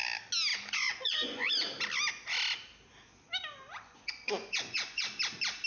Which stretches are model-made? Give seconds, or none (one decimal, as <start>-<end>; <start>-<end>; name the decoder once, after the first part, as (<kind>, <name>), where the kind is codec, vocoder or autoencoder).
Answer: 0.5-1.5 (vocoder, Vocos); 3.7-5.1